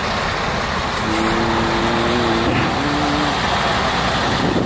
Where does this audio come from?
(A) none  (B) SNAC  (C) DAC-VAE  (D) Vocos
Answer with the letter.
A